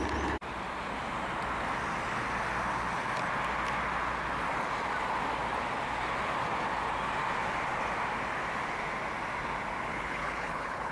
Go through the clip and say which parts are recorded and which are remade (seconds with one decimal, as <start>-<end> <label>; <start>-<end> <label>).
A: 0.0-9.9 recorded; 9.9-10.9 remade